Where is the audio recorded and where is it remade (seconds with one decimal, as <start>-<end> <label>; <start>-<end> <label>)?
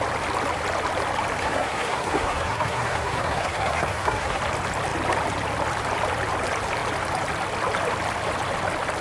0.0-1.4 recorded; 1.4-4.4 remade; 4.4-9.0 recorded